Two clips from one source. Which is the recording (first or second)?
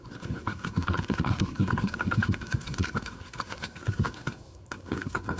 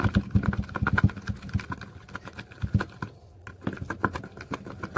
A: second